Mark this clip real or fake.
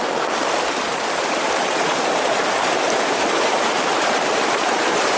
fake